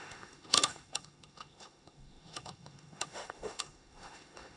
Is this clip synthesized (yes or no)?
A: yes